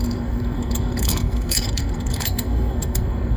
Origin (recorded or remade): remade